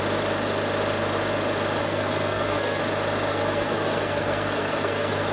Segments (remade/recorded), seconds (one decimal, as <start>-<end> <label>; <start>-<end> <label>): 0.0-1.8 recorded; 1.8-2.8 remade; 2.8-3.3 recorded; 3.3-5.3 remade